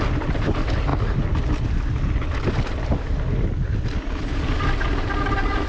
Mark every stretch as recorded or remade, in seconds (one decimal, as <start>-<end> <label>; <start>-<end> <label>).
0.0-5.7 recorded